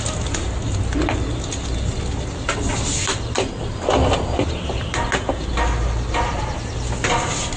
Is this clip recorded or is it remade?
recorded